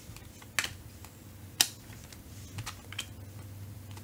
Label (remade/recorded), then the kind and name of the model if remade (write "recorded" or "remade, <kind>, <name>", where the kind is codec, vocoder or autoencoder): recorded